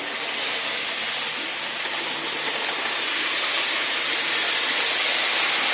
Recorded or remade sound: recorded